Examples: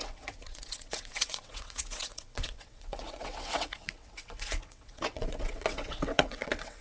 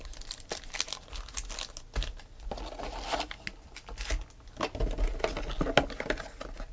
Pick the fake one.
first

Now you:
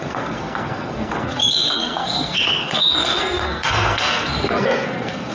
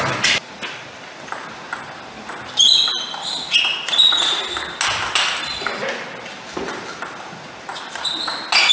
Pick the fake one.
first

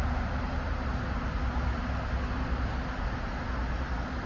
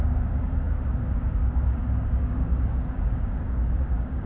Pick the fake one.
second